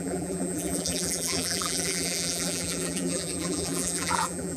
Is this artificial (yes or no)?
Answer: yes